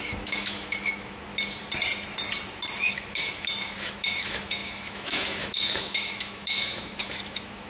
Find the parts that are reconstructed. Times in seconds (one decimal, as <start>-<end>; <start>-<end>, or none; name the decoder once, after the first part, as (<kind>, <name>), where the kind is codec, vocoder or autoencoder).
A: 0.0-1.3 (autoencoder, DAC-VAE); 2.9-7.7